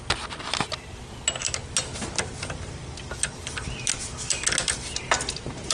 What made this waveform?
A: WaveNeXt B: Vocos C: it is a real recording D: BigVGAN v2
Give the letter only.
C